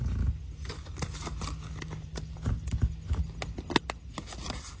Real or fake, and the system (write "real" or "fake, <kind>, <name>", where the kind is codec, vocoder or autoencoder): real